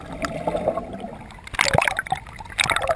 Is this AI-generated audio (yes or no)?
no